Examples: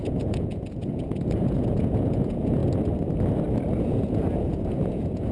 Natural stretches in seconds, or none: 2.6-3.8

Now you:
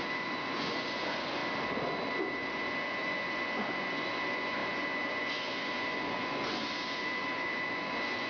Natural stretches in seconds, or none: 1.4-2.2

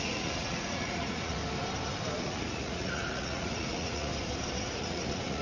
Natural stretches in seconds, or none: 1.4-2.2; 4.1-4.6

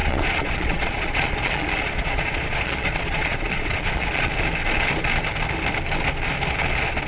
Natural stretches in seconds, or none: 4.3-7.1

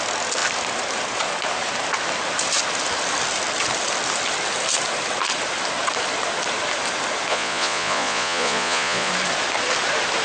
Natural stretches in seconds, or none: 0.0-7.3; 9.1-10.2

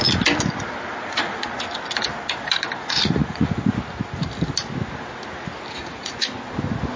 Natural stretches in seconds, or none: 0.0-1.0; 1.5-2.8; 3.5-5.8; 6.3-7.0